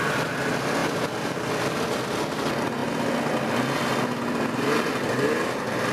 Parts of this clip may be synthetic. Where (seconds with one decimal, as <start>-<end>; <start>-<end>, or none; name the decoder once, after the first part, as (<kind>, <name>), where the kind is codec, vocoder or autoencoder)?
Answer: none